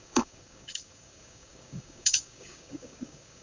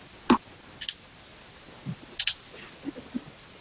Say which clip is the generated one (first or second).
first